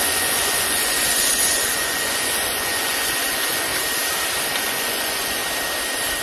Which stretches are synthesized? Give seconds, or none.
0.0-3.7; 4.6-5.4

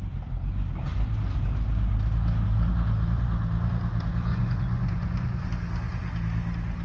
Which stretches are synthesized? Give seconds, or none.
4.3-5.5

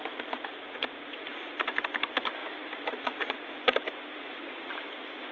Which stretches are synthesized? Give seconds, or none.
0.5-1.5; 2.4-3.5; 4.1-4.7

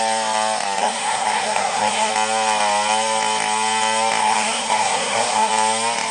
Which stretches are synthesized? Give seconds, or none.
0.8-2.1; 4.2-5.5